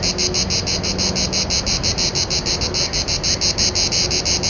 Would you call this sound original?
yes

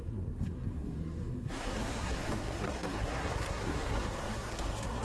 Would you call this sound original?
no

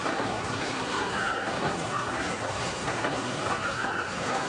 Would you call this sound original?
no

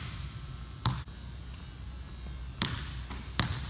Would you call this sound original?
yes